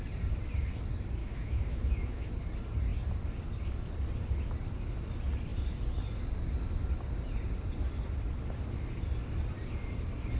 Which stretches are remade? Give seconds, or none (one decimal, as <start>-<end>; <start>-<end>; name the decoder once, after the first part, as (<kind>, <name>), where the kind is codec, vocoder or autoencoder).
1.2-2.3 (autoencoder, DAC-VAE)